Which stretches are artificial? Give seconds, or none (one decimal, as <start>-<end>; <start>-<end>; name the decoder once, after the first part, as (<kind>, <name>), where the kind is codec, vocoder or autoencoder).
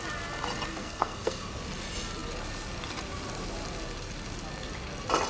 0.7-1.6 (codec, SNAC)